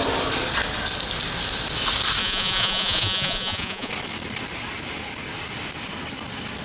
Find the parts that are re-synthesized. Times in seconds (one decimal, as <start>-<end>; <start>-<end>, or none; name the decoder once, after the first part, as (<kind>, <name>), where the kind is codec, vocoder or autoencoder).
2.2-3.9 (vocoder, Vocos)

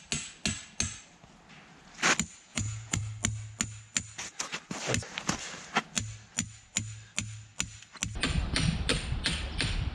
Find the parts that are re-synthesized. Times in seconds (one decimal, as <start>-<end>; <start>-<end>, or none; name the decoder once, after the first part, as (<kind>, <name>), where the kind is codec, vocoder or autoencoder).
2.5-3.0 (vocoder, Vocos)

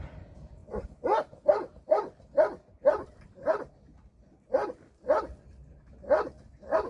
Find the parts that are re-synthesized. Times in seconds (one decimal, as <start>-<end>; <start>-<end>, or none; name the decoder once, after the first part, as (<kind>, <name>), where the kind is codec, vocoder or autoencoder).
none

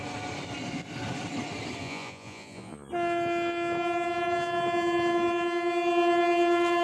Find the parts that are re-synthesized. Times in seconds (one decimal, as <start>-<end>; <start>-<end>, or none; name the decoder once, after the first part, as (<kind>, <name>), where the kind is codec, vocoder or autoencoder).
1.8-2.9 (vocoder, Vocos)

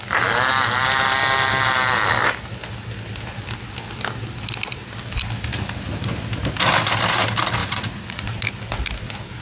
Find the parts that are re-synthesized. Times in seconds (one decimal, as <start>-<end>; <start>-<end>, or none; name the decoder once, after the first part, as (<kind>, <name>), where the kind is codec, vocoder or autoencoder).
7.6-8.4 (vocoder, Vocos)